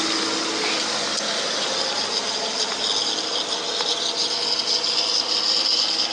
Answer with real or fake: real